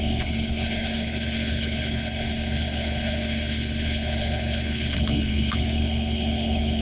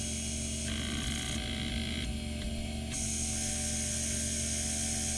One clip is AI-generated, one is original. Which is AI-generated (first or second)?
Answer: first